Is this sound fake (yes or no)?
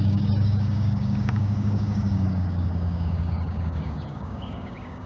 yes